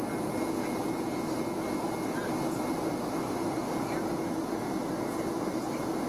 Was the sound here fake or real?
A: real